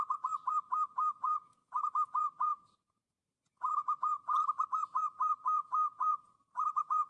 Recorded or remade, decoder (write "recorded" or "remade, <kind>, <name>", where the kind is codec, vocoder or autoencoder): remade, vocoder, Vocos